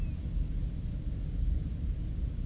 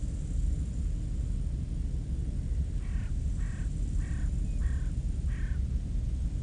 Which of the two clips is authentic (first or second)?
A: second